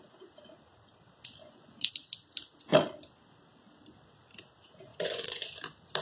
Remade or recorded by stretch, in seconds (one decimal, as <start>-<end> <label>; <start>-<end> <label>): 0.0-1.4 recorded; 1.4-1.9 remade; 1.9-4.9 recorded; 4.9-5.6 remade; 5.6-6.0 recorded

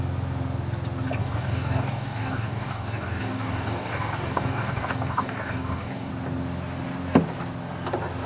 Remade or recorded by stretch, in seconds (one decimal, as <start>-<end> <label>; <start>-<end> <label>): 0.0-1.2 recorded; 1.2-6.1 remade; 6.1-8.3 recorded